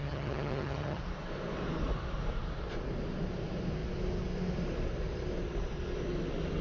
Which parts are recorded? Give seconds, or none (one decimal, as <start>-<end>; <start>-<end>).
1.0-6.6